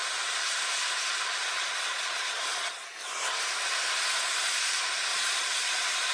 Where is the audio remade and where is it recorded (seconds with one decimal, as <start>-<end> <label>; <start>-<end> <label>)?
0.0-1.4 recorded; 1.4-2.8 remade; 2.8-5.1 recorded; 5.1-6.1 remade